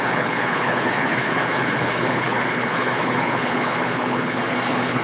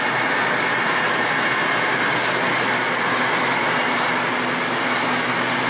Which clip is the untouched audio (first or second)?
second